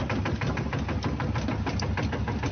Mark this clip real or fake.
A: real